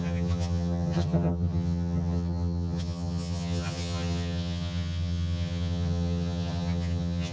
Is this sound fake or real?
fake